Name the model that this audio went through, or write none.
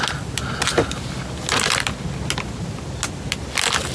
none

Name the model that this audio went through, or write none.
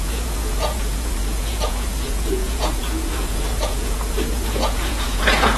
vocoder, Vocos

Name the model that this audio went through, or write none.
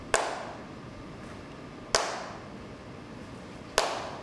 none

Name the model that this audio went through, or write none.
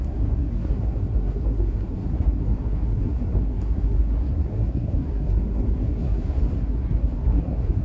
codec, SNAC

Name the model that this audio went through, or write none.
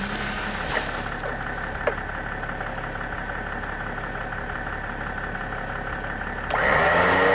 none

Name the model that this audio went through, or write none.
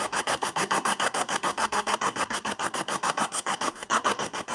codec, SNAC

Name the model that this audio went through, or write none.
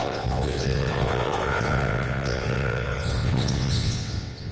vocoder, WaveNeXt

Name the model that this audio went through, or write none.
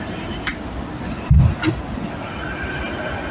none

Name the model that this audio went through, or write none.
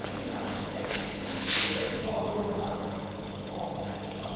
codec, HILCodec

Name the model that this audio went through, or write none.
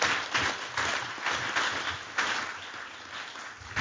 none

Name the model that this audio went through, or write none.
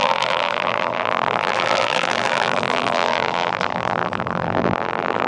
vocoder, BigVGAN v2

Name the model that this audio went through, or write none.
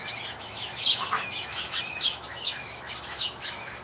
autoencoder, DAC-VAE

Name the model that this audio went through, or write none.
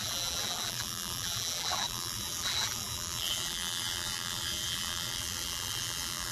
vocoder, BigVGAN v2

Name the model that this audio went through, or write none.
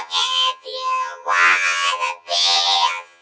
vocoder, HiFi-GAN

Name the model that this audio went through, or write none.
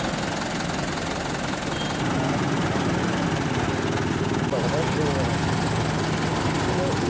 none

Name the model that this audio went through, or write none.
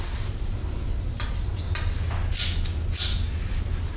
none